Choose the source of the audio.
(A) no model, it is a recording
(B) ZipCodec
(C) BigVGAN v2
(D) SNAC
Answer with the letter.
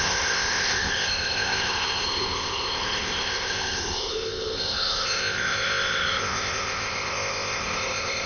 B